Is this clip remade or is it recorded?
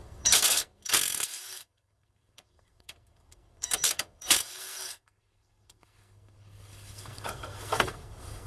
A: remade